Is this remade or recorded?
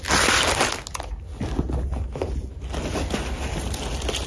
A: recorded